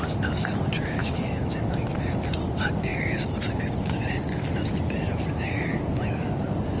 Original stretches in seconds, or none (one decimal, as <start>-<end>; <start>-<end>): 0.0-1.0; 1.6-6.8